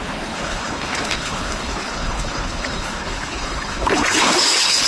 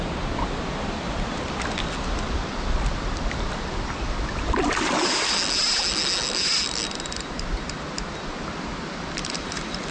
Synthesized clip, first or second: first